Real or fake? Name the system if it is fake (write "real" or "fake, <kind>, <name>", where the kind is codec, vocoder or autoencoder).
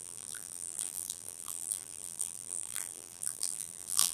fake, vocoder, BigVGAN v2